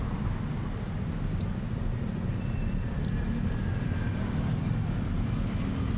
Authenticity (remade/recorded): recorded